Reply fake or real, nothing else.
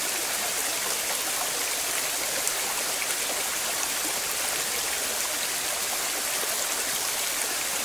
real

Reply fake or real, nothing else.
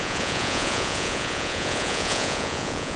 fake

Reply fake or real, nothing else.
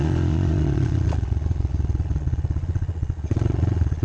fake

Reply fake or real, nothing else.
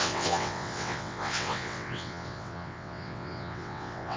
fake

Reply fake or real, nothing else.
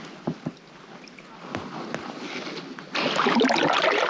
real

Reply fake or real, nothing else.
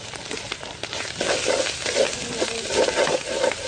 real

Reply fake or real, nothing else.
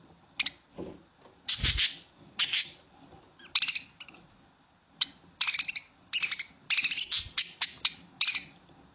real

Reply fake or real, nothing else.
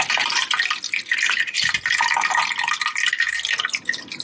real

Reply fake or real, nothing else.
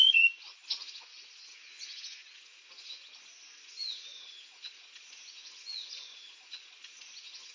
fake